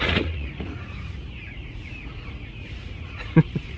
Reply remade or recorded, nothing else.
remade